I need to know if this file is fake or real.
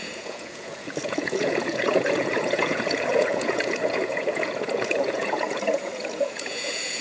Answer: fake